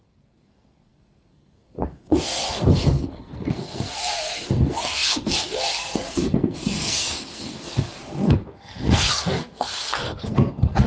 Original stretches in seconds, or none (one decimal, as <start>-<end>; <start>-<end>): none